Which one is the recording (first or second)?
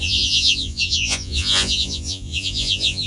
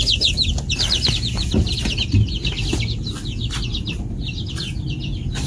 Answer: second